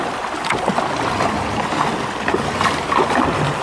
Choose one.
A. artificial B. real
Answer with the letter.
B